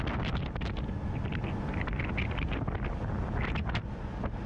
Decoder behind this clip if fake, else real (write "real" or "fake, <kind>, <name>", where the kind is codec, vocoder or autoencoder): real